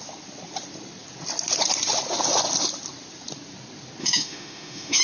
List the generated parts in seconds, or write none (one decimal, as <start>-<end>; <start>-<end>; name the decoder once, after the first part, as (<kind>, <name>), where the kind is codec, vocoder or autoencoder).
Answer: 4.0-5.0 (autoencoder, DAC-VAE)

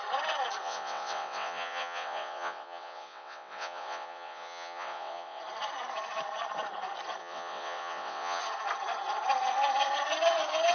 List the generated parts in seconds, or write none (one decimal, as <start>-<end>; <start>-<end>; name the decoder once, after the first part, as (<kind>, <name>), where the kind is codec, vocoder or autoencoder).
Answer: 0.6-5.4 (vocoder, WaveNeXt); 7.2-8.4

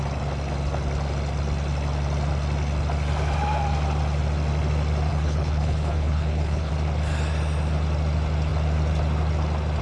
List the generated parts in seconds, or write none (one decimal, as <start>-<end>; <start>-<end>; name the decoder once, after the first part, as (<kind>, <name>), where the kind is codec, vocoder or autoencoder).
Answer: 5.1-6.7 (codec, HILCodec)